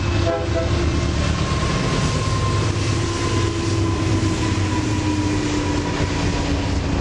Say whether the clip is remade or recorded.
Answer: recorded